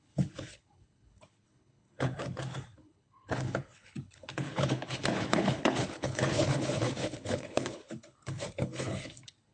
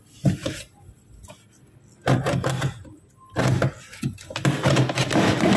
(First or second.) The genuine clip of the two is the second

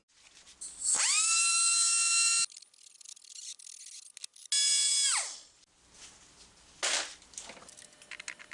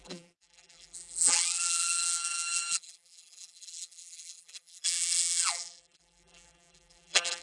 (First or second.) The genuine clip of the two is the first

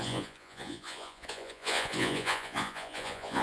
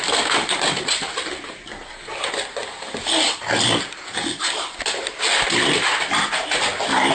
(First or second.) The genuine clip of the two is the second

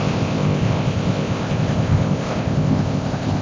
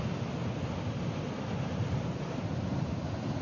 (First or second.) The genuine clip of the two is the second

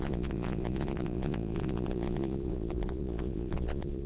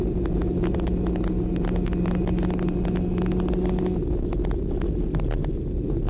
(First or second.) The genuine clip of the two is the second